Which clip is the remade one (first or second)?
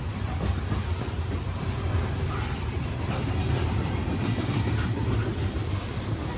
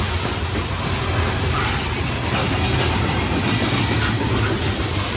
first